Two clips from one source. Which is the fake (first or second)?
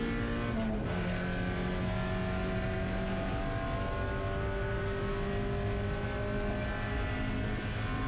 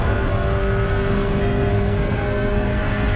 second